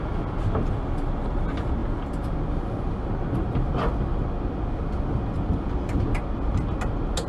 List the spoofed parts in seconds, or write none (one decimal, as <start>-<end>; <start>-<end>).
none